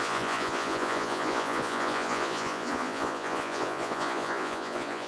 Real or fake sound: fake